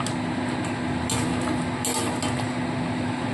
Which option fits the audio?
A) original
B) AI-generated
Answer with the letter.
A